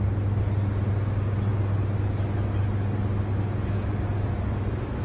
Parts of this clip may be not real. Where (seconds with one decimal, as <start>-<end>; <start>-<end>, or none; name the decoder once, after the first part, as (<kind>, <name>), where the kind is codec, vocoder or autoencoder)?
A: none